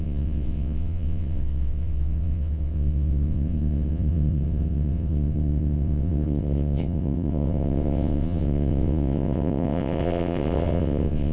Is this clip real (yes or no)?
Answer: no